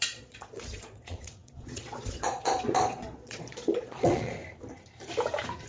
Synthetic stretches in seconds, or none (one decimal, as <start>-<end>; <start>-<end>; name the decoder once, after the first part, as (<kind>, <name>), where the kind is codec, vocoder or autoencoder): 0.0-4.4 (vocoder, Vocos)